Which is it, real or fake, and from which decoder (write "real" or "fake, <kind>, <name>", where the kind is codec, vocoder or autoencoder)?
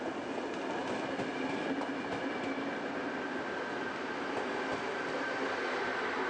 real